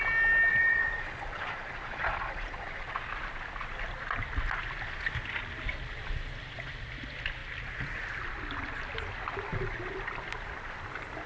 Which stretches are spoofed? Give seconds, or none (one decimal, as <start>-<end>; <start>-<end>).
0.5-3.1